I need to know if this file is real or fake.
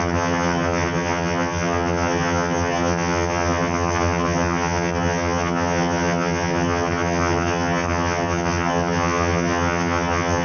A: fake